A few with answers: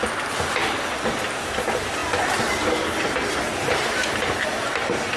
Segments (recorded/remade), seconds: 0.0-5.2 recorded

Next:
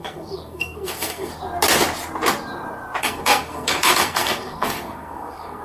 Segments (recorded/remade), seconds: 0.0-1.3 remade; 1.3-3.0 recorded; 3.0-5.6 remade